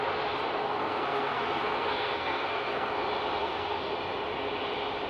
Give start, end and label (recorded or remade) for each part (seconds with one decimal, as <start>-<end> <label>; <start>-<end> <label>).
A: 0.0-0.6 recorded; 0.6-2.9 remade; 2.9-3.4 recorded; 3.4-3.9 remade; 3.9-5.1 recorded